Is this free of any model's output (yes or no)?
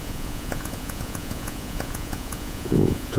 no